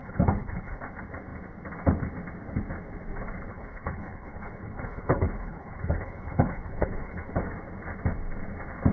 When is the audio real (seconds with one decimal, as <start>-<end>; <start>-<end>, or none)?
0.8-3.5; 7.3-8.9